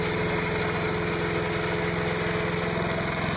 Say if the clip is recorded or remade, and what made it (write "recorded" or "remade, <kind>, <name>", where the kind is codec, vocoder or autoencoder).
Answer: recorded